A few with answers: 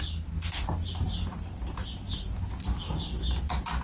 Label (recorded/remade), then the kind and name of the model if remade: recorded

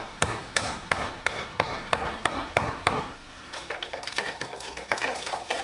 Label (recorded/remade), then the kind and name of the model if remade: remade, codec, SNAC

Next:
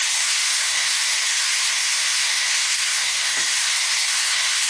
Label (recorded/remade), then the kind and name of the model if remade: remade, codec, SNAC